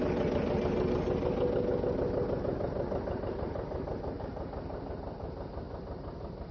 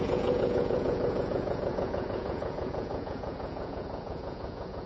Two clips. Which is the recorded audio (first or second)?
first